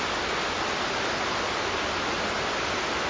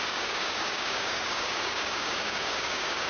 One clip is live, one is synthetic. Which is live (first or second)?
first